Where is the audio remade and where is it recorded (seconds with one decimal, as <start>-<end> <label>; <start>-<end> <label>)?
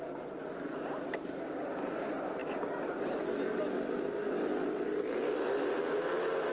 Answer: 0.0-6.5 recorded